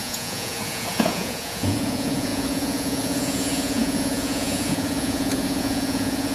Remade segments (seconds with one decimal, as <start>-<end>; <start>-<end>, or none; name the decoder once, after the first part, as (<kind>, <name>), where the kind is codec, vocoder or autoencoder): 0.0-6.3 (vocoder, Vocos)